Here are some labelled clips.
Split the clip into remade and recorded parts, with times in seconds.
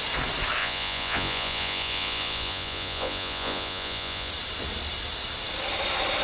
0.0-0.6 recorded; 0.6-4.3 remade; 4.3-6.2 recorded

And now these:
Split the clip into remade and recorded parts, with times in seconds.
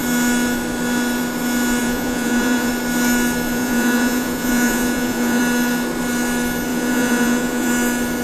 0.0-1.8 recorded; 1.8-2.7 remade; 2.7-3.5 recorded; 3.5-5.4 remade; 5.4-6.7 recorded; 6.7-7.7 remade; 7.7-8.2 recorded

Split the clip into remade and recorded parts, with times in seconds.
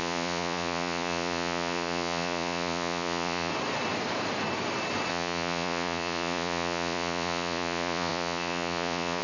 0.0-3.5 remade; 3.5-5.1 recorded; 5.1-9.2 remade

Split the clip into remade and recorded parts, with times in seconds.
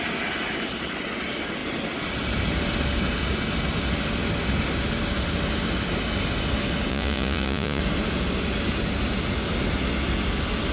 0.0-6.9 recorded; 6.9-7.8 remade; 7.8-10.7 recorded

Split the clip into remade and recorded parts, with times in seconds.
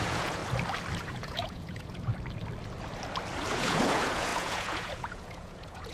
0.0-0.4 remade; 0.4-1.0 recorded; 1.0-2.1 remade; 2.1-3.5 recorded; 3.5-5.9 remade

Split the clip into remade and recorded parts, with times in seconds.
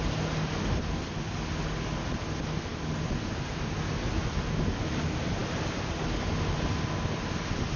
0.0-7.8 recorded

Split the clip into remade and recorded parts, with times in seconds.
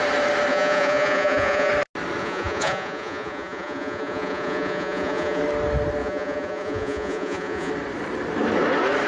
0.0-0.5 recorded; 0.5-1.7 remade; 1.7-2.2 recorded; 2.2-5.4 remade; 5.4-6.0 recorded; 6.0-7.7 remade; 7.7-9.1 recorded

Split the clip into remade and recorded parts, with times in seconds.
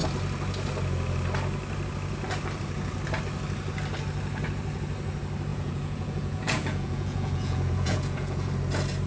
0.0-5.5 recorded; 5.5-8.5 remade; 8.5-9.1 recorded